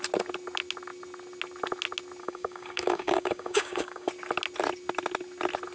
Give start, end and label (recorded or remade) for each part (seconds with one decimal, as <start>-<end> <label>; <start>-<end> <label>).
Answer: 0.0-2.2 recorded; 2.2-4.1 remade; 4.1-5.7 recorded